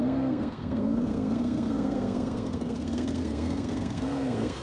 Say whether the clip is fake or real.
fake